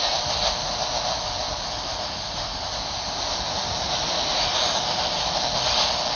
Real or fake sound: real